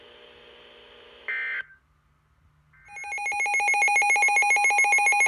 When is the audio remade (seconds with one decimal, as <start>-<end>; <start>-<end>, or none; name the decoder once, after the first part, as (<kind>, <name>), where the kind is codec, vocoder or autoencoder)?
none